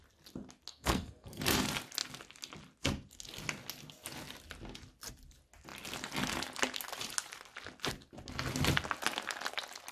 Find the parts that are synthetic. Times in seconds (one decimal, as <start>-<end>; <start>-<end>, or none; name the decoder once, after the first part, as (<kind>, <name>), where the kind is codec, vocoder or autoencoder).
0.7-1.4 (codec, SNAC)